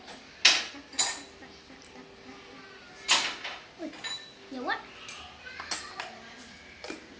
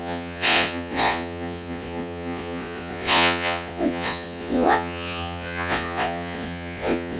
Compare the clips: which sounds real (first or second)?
first